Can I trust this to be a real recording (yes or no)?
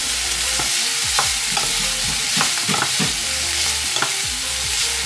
yes